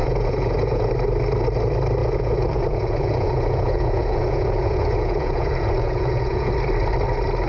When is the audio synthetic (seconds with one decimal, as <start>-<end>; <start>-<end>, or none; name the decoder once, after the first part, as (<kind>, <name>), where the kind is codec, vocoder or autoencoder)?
0.0-0.9 (vocoder, Vocos); 2.0-6.5